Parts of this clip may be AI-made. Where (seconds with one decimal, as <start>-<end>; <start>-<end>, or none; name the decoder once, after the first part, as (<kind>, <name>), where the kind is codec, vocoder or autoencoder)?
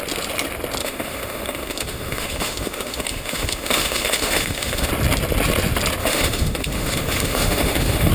0.8-4.9 (autoencoder, DAC-VAE); 6.0-8.1